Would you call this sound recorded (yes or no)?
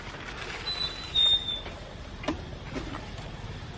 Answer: yes